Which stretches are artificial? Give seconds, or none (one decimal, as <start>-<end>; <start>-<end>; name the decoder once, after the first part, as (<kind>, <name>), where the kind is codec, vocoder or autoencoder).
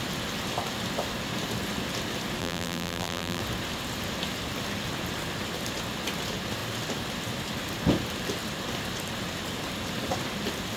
2.4-3.4 (vocoder, BigVGAN v2)